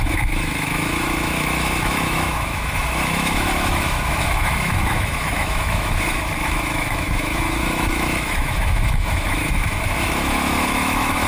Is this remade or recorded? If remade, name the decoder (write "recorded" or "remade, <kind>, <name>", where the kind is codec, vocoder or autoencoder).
remade, autoencoder, DAC-VAE